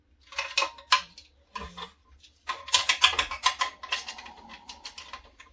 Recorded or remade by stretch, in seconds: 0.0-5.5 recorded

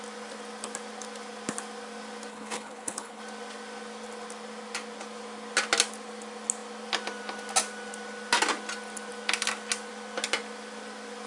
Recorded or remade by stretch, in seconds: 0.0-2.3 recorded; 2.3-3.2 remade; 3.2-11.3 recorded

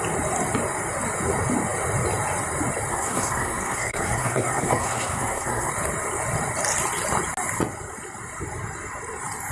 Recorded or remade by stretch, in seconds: 0.0-2.9 recorded; 2.9-5.7 remade; 5.7-9.5 recorded